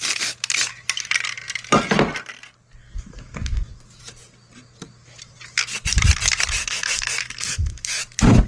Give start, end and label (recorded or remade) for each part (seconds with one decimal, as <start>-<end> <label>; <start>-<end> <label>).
0.0-2.8 recorded; 2.8-3.7 remade; 3.7-6.6 recorded; 6.6-8.0 remade; 8.0-8.5 recorded